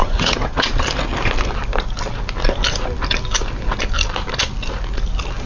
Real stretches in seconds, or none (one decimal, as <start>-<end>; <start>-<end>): 0.7-5.5